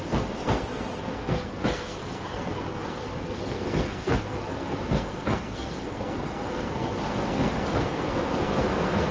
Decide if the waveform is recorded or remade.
remade